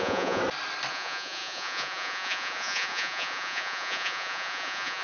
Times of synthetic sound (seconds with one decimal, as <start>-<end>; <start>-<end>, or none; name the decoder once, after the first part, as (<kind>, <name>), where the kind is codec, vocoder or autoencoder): 0.0-0.4 (vocoder, Vocos); 0.9-5.0